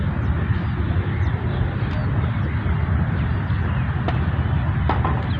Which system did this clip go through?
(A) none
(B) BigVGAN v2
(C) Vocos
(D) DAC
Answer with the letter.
A